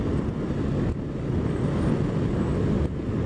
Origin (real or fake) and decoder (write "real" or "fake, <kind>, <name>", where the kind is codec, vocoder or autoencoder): real